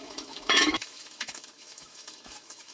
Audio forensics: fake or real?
fake